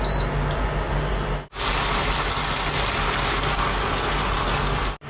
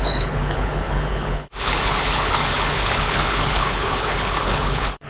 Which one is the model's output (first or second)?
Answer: second